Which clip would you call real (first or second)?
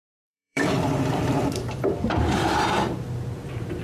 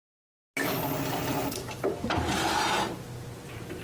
second